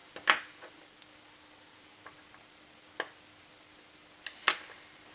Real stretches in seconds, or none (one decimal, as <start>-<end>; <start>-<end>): 0.0-5.1